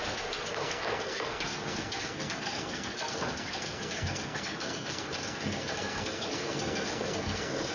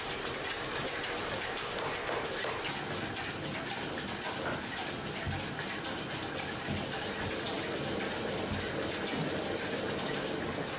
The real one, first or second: second